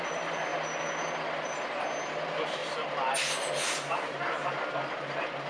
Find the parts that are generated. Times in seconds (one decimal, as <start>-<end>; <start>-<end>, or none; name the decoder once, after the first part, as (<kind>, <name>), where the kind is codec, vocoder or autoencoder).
none